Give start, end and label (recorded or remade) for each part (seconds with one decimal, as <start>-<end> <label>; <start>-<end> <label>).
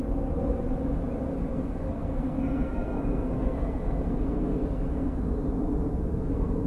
0.0-1.3 recorded; 1.3-5.3 remade; 5.3-5.9 recorded; 5.9-6.7 remade